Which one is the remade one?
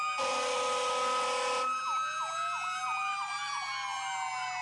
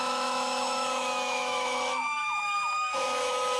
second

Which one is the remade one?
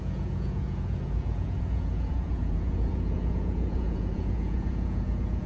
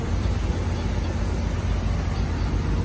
first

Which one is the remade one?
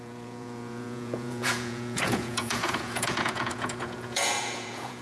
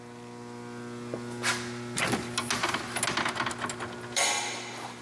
first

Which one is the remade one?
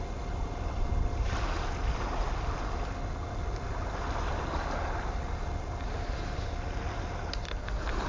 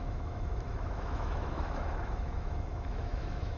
second